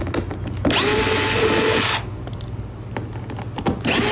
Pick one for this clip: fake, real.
real